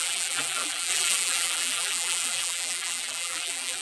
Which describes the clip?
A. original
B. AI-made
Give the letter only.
B